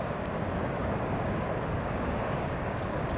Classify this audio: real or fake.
fake